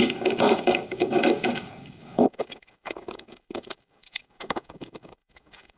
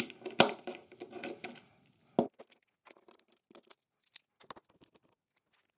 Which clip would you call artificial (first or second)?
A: first